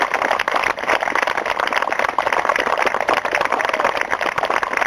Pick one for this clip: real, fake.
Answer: real